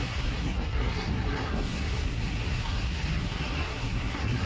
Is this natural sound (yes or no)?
no